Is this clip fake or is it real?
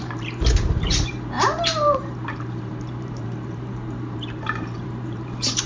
fake